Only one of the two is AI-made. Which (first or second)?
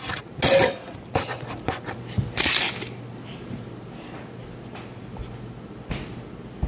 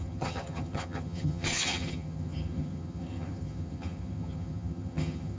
second